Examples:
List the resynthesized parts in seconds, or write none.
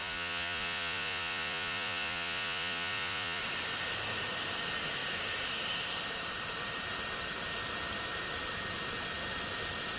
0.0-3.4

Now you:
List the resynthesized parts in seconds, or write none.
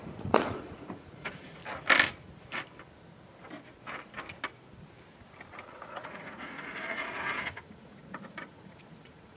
0.0-1.6; 5.7-9.4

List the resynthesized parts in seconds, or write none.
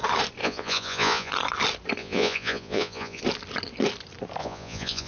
0.4-1.3; 2.0-3.2; 4.4-5.1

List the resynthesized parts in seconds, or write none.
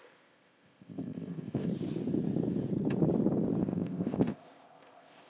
0.0-1.7; 3.6-5.3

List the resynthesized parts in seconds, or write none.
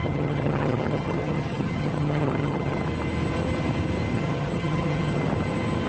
0.0-2.8; 4.1-5.2